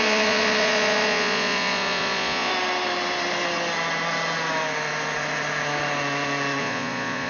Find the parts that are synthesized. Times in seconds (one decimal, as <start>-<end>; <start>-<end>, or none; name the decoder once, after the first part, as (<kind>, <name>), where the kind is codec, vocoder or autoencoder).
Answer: 0.0-2.5 (vocoder, Vocos); 6.6-7.3